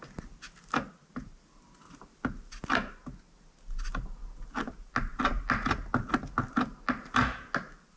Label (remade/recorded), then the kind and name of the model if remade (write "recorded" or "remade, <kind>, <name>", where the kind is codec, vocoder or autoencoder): recorded